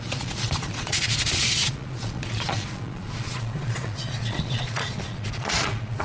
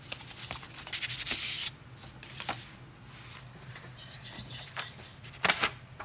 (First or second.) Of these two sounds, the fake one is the first